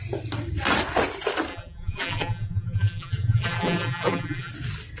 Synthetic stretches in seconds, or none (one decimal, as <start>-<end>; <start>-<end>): 1.5-4.5